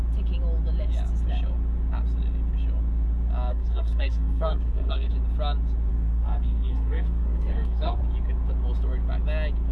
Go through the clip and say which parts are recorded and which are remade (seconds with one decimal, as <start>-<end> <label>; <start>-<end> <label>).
0.0-3.5 recorded; 3.5-5.1 remade; 5.1-5.9 recorded; 5.9-8.0 remade; 8.0-9.7 recorded